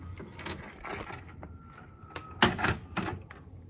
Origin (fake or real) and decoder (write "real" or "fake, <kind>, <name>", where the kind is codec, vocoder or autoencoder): real